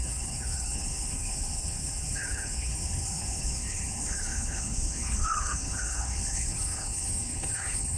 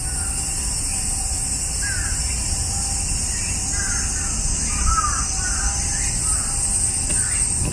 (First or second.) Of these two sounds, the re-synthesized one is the first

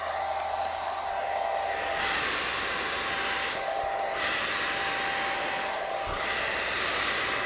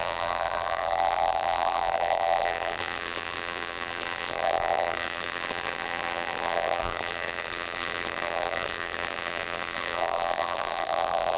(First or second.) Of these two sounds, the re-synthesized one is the second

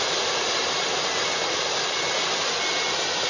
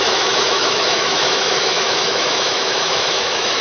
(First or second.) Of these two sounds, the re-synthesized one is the second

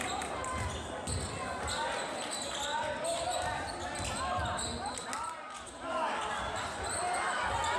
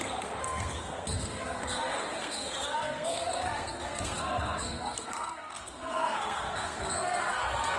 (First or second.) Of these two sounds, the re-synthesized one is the second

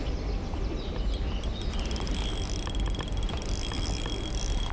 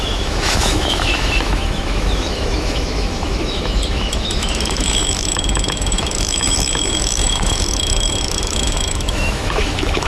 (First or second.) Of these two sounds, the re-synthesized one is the second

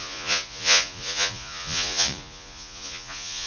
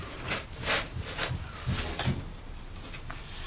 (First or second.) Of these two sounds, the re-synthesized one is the first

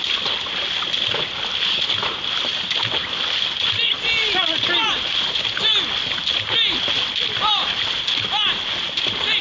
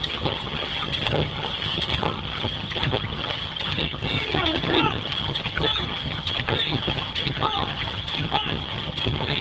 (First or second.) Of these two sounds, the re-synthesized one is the second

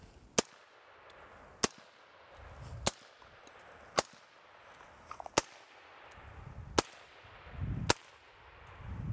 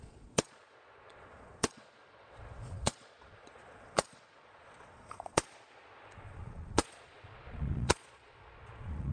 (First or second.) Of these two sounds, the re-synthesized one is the second